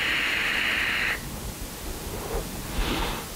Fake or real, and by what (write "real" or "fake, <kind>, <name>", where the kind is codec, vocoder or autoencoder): real